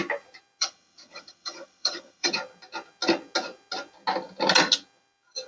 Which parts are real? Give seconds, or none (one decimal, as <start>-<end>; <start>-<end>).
0.0-0.6; 2.3-5.5